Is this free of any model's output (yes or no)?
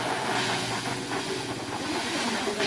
no